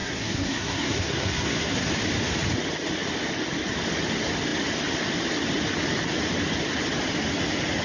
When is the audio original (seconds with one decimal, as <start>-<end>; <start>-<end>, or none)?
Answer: 1.9-7.8